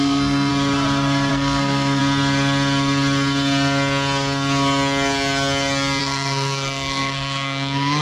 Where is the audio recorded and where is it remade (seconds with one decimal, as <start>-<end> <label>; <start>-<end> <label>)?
0.0-0.5 remade; 0.5-1.3 recorded; 1.3-2.0 remade; 2.0-6.0 recorded; 6.0-8.0 remade